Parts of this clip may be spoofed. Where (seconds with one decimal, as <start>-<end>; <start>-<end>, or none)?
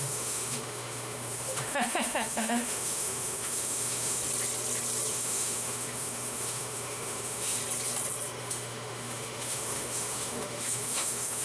0.0-4.2; 5.1-7.6; 8.4-11.4